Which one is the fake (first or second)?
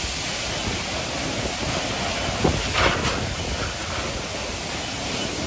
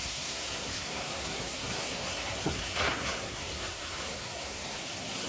second